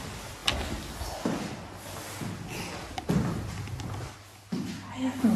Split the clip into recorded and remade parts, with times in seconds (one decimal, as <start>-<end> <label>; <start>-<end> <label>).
0.0-5.4 recorded